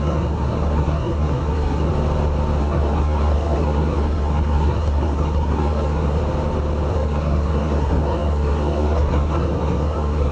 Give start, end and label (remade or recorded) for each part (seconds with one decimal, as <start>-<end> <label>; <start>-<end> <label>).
0.0-1.9 remade; 1.9-2.6 recorded; 2.6-6.2 remade; 6.2-6.9 recorded; 6.9-10.3 remade